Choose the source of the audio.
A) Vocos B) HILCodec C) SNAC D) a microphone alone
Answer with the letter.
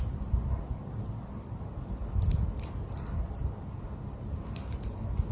D